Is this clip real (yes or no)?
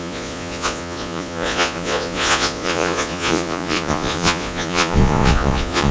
no